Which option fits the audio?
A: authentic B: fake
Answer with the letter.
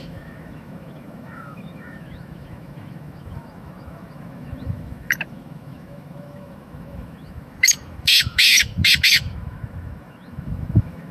B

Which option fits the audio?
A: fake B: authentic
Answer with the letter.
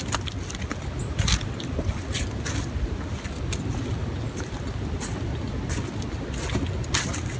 B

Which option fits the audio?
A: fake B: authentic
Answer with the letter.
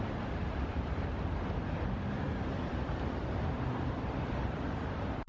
A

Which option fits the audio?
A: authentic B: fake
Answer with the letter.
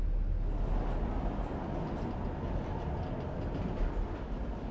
A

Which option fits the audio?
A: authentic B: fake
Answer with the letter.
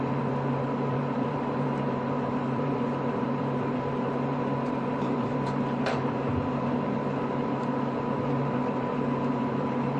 B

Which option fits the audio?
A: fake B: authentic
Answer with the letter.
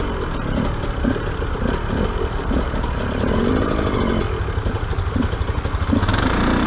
B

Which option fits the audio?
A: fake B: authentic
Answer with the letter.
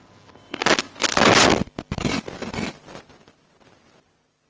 B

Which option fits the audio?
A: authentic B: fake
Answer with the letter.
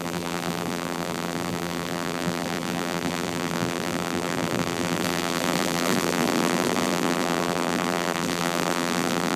B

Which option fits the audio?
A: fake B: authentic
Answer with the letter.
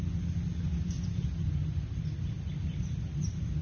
B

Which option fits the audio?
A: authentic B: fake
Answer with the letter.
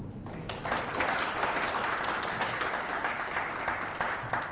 A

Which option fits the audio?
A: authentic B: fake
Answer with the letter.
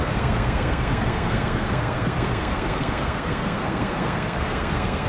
B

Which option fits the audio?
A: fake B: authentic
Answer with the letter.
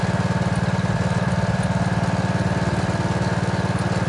B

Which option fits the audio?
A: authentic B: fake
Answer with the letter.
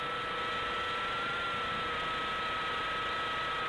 A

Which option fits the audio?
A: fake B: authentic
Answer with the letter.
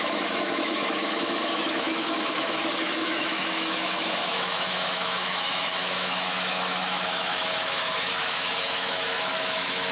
A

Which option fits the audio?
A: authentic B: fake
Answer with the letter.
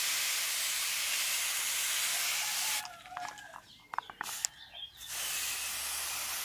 A